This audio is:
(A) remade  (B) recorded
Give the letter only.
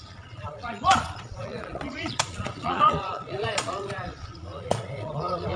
A